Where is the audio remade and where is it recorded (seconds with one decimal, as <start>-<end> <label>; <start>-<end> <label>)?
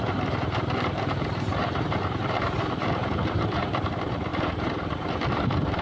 0.0-5.8 remade